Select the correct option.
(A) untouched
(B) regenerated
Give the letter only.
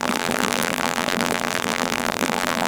B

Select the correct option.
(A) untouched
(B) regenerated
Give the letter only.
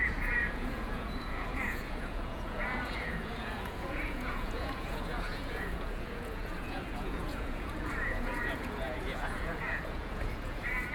B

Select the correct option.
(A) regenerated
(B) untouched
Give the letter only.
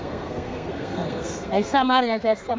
A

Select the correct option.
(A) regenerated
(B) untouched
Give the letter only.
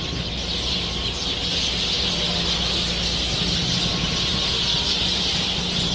B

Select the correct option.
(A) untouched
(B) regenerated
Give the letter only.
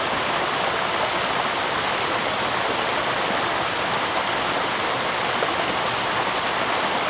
A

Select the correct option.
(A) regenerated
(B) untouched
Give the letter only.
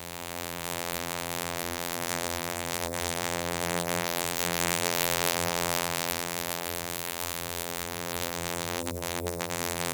A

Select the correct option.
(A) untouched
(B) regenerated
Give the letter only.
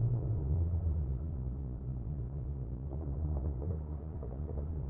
B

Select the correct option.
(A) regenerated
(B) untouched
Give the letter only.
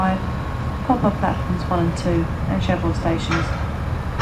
B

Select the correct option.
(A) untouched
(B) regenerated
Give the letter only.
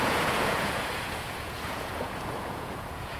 B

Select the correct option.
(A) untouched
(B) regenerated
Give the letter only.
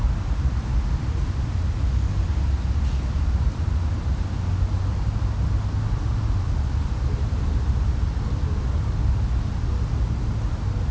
A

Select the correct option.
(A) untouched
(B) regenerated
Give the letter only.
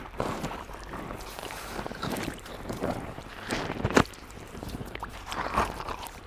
B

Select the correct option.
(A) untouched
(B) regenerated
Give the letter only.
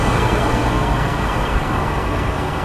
B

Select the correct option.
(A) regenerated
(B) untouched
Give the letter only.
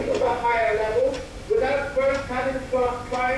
B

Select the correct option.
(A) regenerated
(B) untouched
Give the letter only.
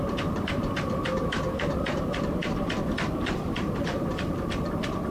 A